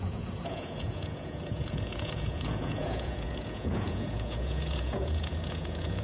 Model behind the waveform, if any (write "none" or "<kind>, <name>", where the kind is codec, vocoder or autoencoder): vocoder, Vocos